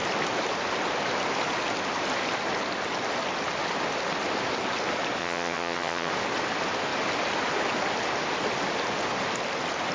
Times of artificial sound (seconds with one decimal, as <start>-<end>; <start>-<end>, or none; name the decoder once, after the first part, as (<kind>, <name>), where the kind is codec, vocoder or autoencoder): 5.2-6.1 (vocoder, HiFi-GAN)